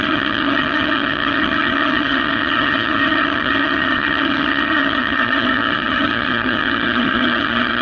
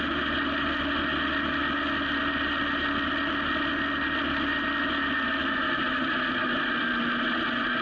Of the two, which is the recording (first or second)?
second